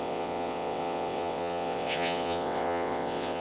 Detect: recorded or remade remade